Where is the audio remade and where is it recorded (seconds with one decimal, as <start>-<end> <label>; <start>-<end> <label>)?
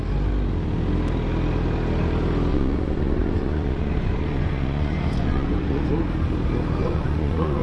0.0-2.5 recorded; 2.5-5.9 remade; 5.9-6.8 recorded; 6.8-7.6 remade